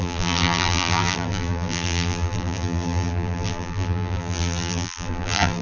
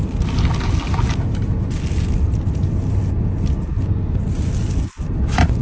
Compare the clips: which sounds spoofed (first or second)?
first